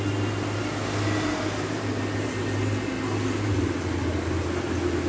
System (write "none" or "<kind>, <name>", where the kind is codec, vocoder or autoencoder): none